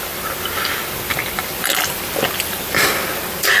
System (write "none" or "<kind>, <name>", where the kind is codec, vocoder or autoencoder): vocoder, BigVGAN v2